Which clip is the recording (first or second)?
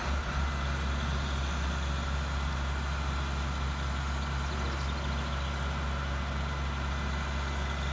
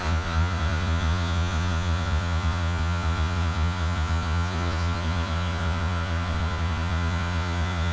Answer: first